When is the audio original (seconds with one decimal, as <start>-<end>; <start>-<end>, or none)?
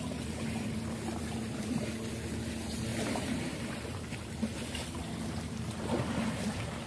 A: 0.0-2.9; 4.3-6.9